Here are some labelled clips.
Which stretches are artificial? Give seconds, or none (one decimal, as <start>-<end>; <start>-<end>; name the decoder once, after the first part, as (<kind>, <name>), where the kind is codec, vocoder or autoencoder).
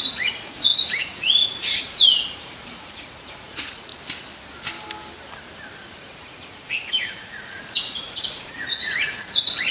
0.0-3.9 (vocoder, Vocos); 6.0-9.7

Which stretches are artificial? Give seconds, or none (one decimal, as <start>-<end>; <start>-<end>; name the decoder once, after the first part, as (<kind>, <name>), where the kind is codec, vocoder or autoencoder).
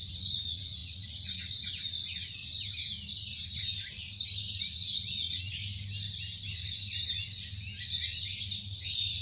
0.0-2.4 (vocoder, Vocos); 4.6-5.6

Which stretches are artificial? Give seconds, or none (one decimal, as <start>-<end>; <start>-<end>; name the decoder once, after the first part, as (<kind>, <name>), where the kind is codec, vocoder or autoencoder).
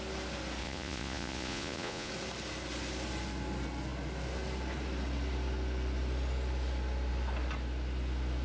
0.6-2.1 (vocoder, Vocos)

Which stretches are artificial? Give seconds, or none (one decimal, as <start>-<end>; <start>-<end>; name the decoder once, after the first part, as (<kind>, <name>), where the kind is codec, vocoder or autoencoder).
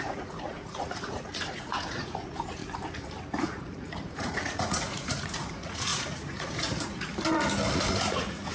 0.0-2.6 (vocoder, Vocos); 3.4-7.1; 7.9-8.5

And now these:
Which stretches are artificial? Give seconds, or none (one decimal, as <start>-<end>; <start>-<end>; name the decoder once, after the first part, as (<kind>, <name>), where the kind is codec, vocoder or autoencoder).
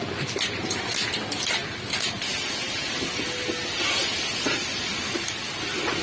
none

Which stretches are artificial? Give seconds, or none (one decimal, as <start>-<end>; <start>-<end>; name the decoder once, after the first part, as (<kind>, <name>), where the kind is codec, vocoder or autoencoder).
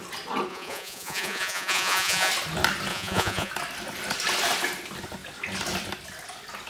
0.5-2.3 (vocoder, Vocos); 2.9-3.5